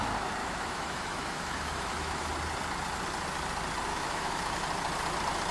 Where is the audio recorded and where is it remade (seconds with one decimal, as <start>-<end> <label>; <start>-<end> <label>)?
0.0-0.4 recorded; 0.4-2.3 remade; 2.3-3.9 recorded; 3.9-4.5 remade; 4.5-5.5 recorded